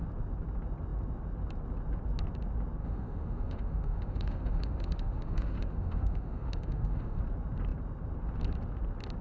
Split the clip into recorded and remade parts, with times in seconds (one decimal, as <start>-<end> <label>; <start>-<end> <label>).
0.0-2.8 recorded; 2.8-7.2 remade; 7.2-9.2 recorded

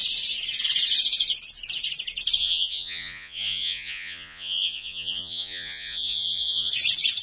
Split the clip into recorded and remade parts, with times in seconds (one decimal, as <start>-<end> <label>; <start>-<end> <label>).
0.0-2.4 recorded; 2.4-6.7 remade; 6.7-7.2 recorded

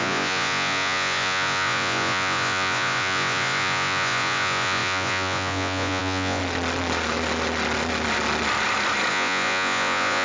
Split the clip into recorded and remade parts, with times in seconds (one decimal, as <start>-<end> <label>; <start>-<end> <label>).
0.0-6.4 remade; 6.4-9.1 recorded; 9.1-10.2 remade

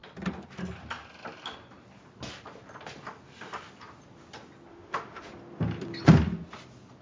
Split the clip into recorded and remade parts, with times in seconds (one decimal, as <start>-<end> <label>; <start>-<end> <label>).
0.0-4.7 recorded; 4.7-5.3 remade; 5.3-7.0 recorded

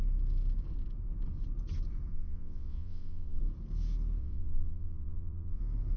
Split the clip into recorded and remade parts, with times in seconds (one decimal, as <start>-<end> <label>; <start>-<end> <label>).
0.0-2.1 recorded; 2.1-3.4 remade; 3.4-4.2 recorded; 4.2-5.6 remade; 5.6-6.0 recorded

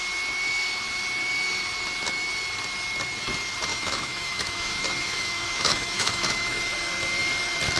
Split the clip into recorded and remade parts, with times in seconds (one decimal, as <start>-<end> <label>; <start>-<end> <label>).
0.0-3.7 recorded; 3.7-6.6 remade; 6.6-7.8 recorded

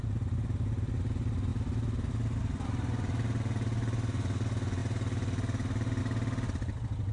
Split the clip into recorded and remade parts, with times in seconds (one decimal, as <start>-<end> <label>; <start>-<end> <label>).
0.0-7.1 recorded